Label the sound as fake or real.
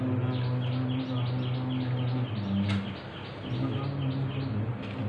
real